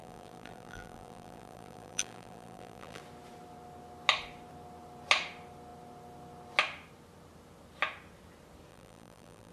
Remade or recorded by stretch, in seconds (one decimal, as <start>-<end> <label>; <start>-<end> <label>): 0.0-3.0 remade; 3.0-8.7 recorded; 8.7-9.5 remade